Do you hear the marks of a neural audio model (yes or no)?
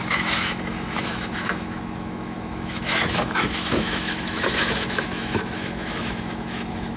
yes